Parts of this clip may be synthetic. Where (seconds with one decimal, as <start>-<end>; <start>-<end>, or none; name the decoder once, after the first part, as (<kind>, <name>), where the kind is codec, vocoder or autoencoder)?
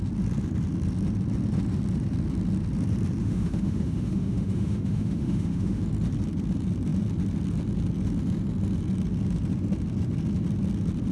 3.2-5.8 (autoencoder, DAC-VAE)